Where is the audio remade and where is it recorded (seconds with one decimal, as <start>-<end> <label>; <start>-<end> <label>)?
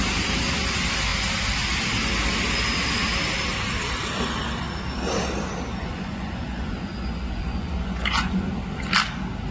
0.0-5.8 recorded; 5.8-8.5 remade; 8.5-9.5 recorded